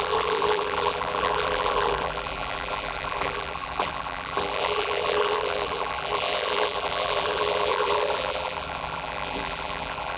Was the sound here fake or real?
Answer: fake